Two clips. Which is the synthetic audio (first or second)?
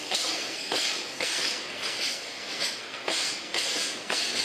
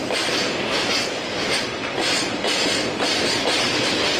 first